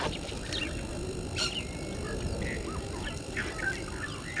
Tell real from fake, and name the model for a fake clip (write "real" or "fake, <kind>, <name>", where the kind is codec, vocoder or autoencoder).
fake, vocoder, BigVGAN v2